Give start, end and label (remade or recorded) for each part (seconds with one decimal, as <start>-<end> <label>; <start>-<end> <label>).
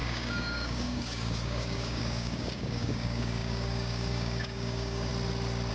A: 0.0-5.1 remade; 5.1-5.7 recorded